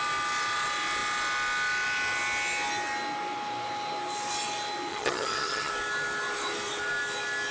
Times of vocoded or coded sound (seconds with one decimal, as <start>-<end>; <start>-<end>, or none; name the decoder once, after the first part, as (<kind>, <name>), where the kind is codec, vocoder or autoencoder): 4.9-5.7 (vocoder, HiFi-GAN)